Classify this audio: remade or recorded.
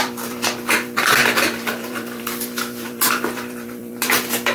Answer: remade